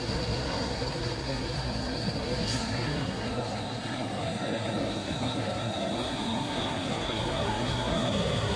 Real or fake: fake